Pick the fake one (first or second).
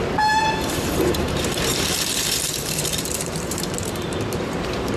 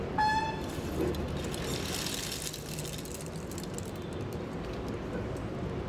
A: first